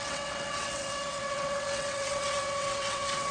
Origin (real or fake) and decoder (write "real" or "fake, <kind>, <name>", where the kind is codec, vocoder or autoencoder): fake, vocoder, WaveNeXt